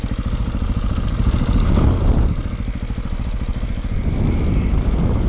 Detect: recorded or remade recorded